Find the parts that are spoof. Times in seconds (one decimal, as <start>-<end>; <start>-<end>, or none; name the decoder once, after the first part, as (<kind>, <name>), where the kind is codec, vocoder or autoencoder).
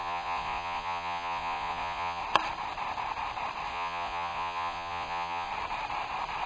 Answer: 0.0-2.2 (vocoder, Vocos); 3.7-5.5